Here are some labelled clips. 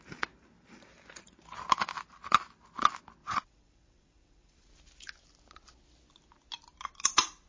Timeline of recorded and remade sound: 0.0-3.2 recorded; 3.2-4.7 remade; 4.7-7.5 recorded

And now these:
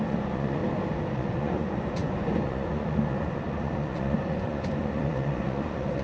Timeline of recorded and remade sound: 0.0-0.6 remade; 0.6-1.1 recorded; 1.1-6.0 remade